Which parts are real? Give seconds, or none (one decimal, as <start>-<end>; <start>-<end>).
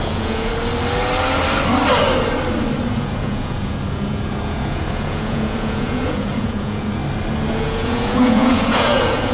0.5-2.9; 7.0-7.5